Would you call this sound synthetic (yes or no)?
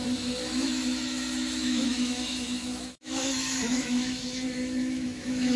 yes